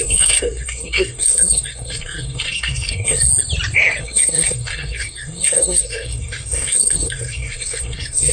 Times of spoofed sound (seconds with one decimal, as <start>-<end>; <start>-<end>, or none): 0.0-3.3; 4.0-8.3